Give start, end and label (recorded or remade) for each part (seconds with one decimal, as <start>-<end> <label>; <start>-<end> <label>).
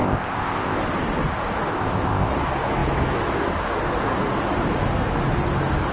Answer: 0.0-0.8 remade; 0.8-1.7 recorded; 1.7-2.3 remade; 2.3-5.9 recorded